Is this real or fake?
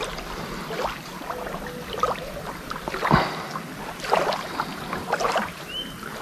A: real